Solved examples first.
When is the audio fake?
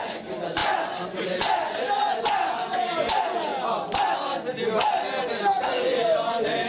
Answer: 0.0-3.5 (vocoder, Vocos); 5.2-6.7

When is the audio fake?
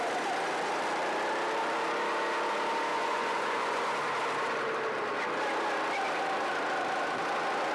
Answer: 2.9-3.8 (vocoder, Vocos)